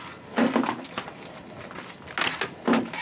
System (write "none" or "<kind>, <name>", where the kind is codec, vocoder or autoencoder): none